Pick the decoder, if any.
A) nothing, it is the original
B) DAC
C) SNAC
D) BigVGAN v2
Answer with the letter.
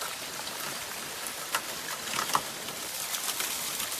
A